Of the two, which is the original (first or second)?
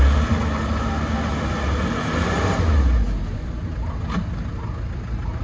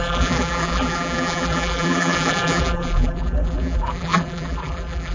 first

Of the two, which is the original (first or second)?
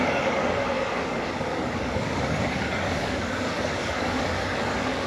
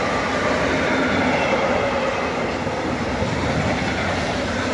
second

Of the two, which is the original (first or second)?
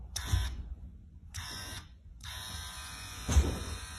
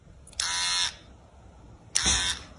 second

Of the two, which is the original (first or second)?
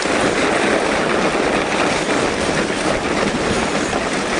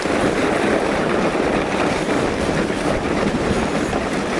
first